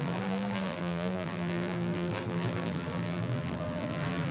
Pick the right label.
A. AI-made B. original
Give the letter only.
A